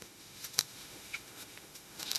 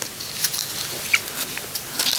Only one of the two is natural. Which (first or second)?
second